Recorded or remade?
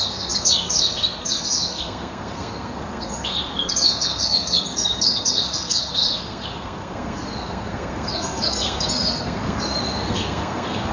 remade